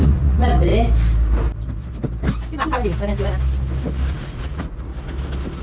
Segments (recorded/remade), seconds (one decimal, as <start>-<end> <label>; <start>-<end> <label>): 0.0-0.7 remade; 0.7-4.1 recorded; 4.1-4.9 remade; 4.9-5.6 recorded